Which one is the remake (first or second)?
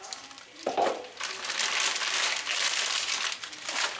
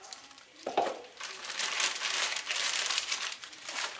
second